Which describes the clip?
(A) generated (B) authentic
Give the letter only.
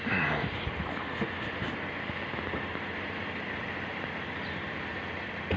B